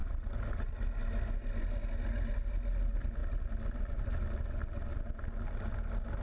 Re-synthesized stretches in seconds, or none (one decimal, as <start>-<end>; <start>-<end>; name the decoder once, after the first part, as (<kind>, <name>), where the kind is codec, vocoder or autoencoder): none